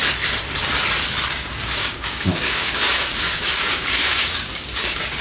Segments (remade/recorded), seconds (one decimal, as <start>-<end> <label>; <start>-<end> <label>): 0.0-1.3 recorded; 1.3-5.2 remade